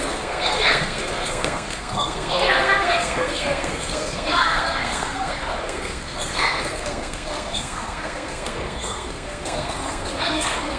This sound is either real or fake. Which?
fake